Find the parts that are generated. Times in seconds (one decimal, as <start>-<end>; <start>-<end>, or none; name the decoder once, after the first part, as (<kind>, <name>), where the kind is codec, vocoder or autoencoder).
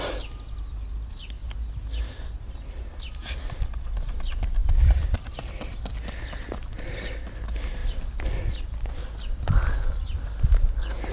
none